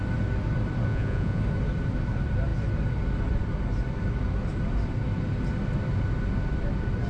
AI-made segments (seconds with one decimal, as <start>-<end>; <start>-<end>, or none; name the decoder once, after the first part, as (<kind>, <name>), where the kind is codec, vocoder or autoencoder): 0.9-1.4 (vocoder, Vocos)